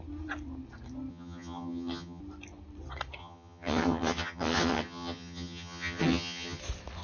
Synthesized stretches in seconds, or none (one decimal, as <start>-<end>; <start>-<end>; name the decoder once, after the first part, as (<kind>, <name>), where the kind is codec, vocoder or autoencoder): 1.1-2.2 (vocoder, HiFi-GAN); 3.2-6.6